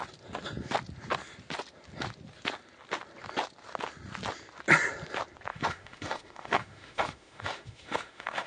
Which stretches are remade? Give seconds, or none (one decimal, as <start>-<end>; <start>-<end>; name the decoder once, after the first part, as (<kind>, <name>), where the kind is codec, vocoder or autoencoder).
5.5-8.5 (autoencoder, DAC-VAE)